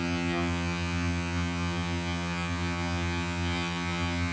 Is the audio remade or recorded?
remade